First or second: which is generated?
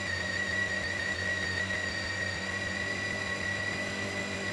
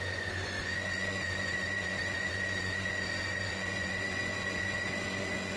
second